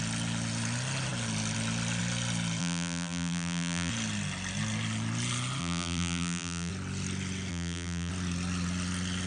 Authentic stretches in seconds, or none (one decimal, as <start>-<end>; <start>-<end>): 0.0-2.6; 3.9-5.6; 6.7-7.5; 8.1-9.3